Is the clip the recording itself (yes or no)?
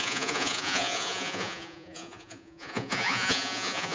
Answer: no